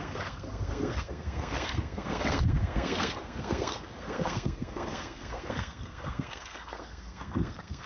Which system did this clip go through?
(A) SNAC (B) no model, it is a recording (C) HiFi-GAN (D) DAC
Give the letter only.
A